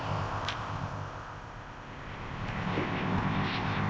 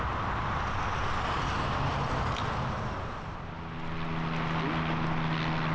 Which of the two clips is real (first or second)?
second